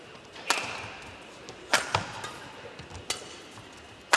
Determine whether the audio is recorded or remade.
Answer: recorded